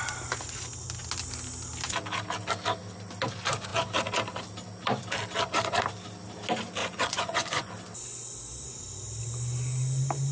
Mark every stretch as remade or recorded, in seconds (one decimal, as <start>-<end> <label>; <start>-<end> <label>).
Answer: 0.0-6.8 recorded; 6.8-7.7 remade; 7.7-10.3 recorded

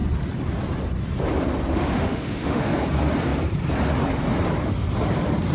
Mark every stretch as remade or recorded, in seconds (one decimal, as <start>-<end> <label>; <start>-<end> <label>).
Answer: 0.0-1.7 recorded; 1.7-2.7 remade; 2.7-5.5 recorded

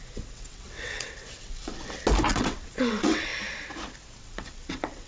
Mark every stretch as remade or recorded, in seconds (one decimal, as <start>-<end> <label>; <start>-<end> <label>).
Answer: 0.0-1.7 remade; 1.7-2.3 recorded; 2.3-3.3 remade; 3.3-4.2 recorded; 4.2-5.1 remade